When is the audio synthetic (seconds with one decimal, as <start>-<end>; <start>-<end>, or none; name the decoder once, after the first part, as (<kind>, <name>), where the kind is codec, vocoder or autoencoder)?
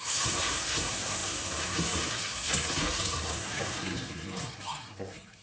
0.0-5.4 (codec, SNAC)